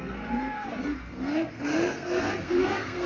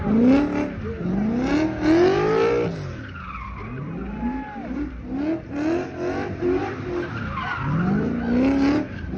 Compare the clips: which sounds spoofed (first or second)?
first